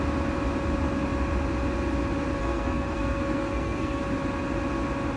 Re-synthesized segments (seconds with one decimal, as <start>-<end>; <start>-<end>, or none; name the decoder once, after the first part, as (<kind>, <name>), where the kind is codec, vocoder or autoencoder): 2.4-4.0 (codec, SNAC)